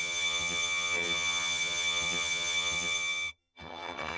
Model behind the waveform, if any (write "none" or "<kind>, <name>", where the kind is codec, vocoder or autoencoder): vocoder, HiFi-GAN